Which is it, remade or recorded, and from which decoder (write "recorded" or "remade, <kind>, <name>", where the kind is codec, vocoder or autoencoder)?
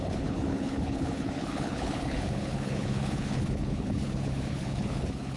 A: remade, codec, HILCodec